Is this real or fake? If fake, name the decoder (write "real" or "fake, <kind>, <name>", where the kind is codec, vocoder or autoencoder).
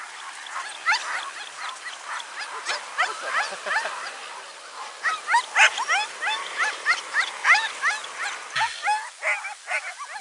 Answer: real